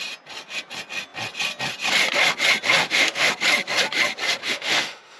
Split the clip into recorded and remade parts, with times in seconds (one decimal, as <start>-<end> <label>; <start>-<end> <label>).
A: 0.0-2.8 recorded; 2.8-3.3 remade; 3.3-4.4 recorded; 4.4-5.2 remade